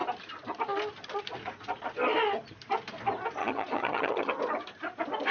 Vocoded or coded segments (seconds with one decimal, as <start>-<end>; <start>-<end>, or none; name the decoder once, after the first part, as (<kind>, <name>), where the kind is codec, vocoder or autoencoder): 3.4-4.3 (vocoder, HiFi-GAN)